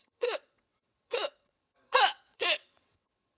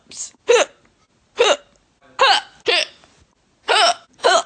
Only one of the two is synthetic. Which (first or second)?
first